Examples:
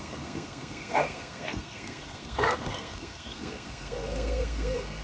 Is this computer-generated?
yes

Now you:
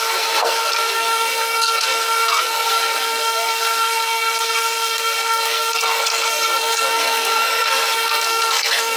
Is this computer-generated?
yes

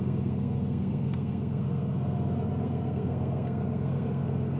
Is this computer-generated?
yes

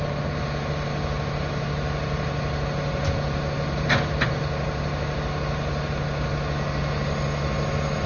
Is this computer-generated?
no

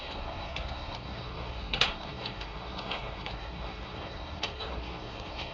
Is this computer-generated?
yes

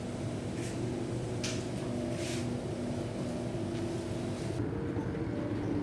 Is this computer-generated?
no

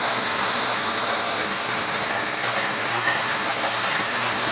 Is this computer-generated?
yes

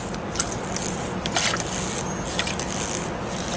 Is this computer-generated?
no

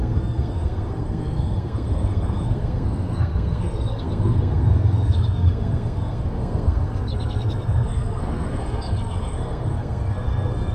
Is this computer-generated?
yes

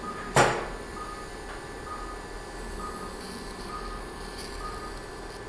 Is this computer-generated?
no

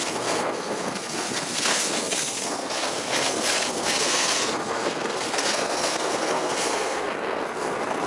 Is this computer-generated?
yes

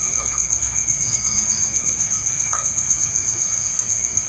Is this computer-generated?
yes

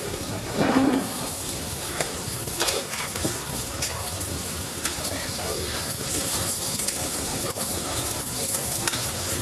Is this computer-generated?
yes